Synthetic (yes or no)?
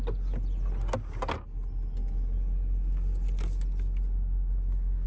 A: no